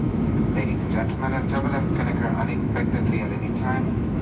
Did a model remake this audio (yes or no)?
yes